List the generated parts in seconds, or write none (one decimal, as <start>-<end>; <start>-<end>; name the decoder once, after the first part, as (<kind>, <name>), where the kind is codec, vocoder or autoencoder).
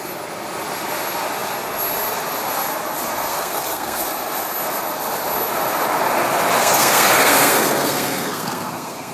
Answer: 3.3-4.0 (codec, SNAC); 6.6-9.1